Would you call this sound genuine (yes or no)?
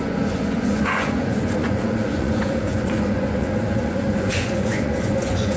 no